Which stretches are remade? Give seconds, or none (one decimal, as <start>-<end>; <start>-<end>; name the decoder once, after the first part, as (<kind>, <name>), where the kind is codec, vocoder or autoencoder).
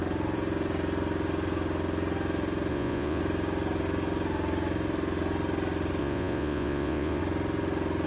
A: 2.7-3.2 (vocoder, Vocos); 6.0-7.2